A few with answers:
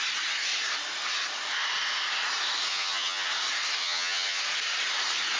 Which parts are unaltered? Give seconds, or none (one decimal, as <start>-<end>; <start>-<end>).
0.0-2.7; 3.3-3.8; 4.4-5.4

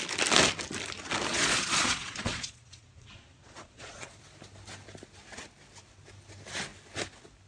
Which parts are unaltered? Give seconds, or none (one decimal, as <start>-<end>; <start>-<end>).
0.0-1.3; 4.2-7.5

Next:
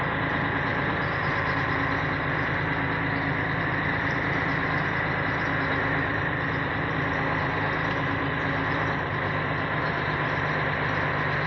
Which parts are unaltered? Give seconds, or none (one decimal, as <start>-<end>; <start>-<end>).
0.0-11.5

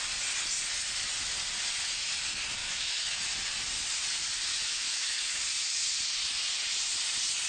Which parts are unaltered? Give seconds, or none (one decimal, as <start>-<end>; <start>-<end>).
0.0-2.6; 3.2-4.5; 5.4-7.5